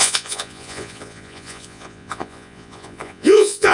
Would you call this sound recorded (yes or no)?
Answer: no